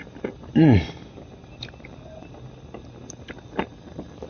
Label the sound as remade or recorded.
recorded